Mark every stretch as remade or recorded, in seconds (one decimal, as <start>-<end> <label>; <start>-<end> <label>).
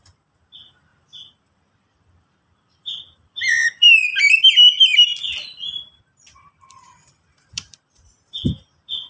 0.0-0.9 recorded; 0.9-4.4 remade; 4.4-4.9 recorded; 4.9-8.3 remade; 8.3-9.1 recorded